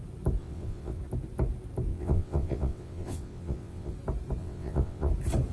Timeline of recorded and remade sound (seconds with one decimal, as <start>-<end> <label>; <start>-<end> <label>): 0.0-0.4 recorded; 0.4-1.0 remade; 1.0-1.9 recorded; 1.9-3.9 remade; 3.9-4.4 recorded; 4.4-5.1 remade; 5.1-5.5 recorded